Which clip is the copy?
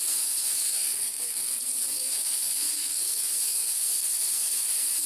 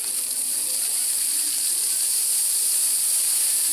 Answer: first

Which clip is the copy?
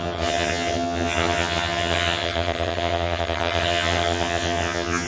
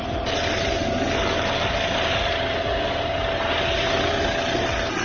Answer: first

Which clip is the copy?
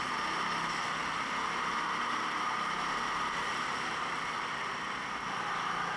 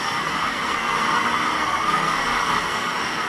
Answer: second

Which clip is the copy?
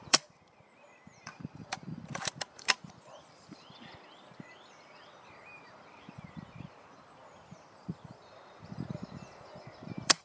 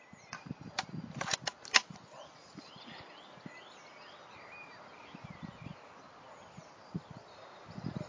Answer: first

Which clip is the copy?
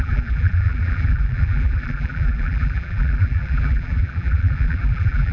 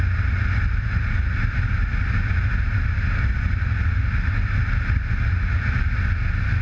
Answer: first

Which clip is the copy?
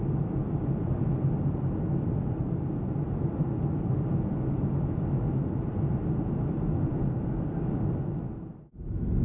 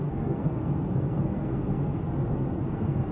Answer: second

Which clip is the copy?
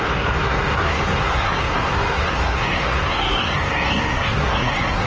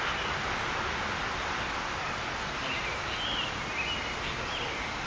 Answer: first